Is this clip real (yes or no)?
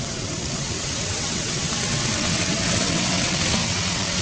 no